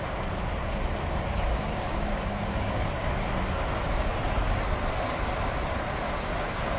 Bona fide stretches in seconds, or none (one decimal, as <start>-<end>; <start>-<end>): 0.0-1.0; 3.1-6.8